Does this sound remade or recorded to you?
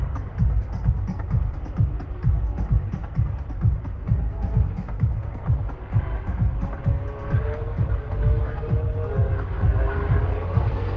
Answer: remade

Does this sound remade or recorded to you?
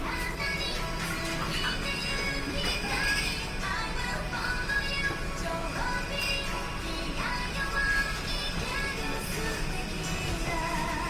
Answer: recorded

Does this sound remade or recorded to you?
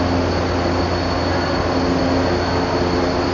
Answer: recorded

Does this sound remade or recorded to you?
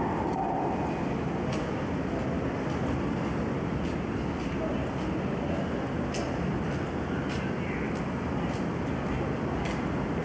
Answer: recorded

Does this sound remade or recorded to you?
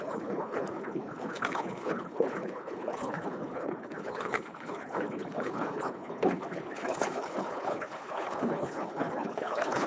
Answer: remade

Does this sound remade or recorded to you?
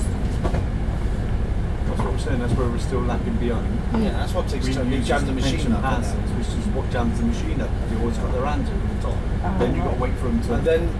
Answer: recorded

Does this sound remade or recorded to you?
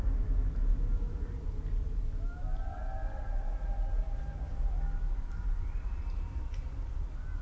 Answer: recorded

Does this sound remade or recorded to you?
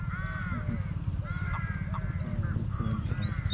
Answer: recorded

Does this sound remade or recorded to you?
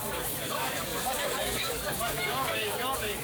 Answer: remade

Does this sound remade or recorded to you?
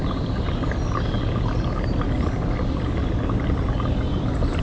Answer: recorded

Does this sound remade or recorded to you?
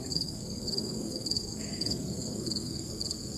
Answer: remade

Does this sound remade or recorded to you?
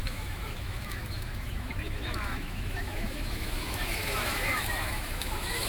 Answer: remade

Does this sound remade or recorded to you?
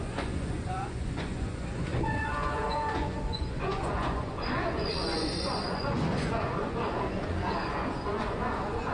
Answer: remade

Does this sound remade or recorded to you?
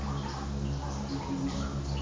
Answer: recorded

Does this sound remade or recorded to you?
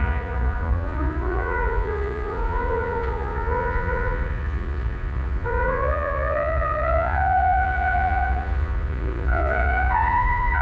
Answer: remade